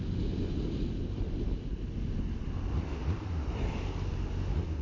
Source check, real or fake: real